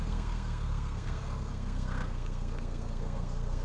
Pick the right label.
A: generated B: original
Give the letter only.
A